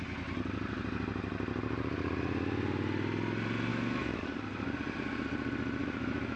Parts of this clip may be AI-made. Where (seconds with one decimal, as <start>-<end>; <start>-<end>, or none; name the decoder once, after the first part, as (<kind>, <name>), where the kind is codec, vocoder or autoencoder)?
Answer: 3.7-4.2 (autoencoder, DAC-VAE); 5.8-6.4